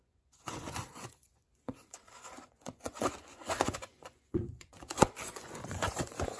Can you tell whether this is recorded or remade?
remade